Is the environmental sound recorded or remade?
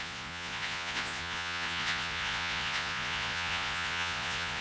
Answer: remade